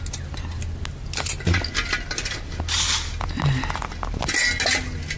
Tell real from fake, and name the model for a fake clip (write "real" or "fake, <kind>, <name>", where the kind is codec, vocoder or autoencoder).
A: real